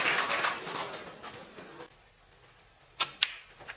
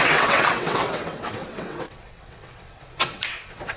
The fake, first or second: second